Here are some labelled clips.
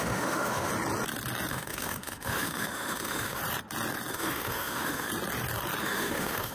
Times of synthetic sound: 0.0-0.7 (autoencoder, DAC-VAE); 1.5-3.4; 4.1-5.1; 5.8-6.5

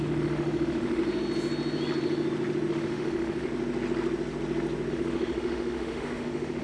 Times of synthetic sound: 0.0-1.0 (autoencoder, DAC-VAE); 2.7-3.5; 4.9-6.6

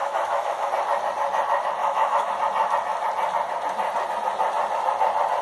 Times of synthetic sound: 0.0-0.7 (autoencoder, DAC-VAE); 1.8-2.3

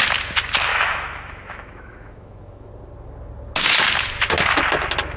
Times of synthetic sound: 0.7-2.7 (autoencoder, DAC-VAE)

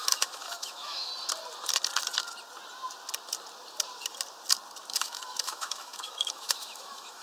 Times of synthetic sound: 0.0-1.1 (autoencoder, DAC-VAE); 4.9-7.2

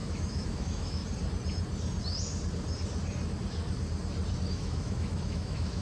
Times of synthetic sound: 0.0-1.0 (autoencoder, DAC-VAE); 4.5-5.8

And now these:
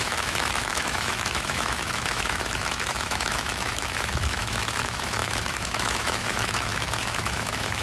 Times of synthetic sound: 0.0-7.8 (autoencoder, DAC-VAE)